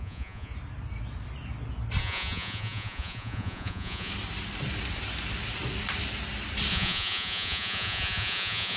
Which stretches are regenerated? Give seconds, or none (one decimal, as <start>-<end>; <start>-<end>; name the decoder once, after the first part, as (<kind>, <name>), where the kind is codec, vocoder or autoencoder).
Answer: 0.0-0.5 (vocoder, Vocos); 2.0-4.1; 6.7-8.8

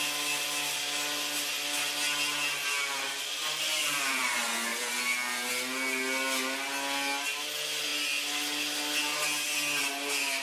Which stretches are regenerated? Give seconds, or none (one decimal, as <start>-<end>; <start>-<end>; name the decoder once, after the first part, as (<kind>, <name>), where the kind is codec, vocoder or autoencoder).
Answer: 3.8-4.3 (vocoder, BigVGAN v2); 4.7-5.5

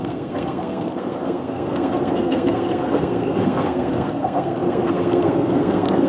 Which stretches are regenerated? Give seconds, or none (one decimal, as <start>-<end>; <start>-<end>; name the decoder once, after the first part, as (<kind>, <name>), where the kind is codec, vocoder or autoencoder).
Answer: 0.0-6.1 (codec, SNAC)

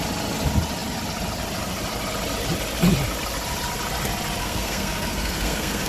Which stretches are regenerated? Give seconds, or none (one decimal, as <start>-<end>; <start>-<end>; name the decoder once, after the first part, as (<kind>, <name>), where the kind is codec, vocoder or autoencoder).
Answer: 4.4-5.9 (codec, SNAC)